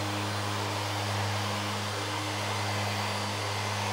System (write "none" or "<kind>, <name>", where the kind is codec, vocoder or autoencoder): none